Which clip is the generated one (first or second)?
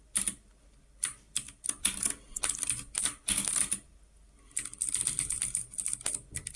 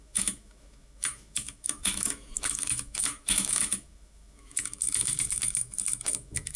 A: second